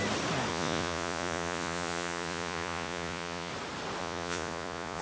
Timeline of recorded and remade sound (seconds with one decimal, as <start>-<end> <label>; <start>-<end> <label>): 0.0-0.5 recorded; 0.5-3.5 remade; 3.5-4.0 recorded; 4.0-5.0 remade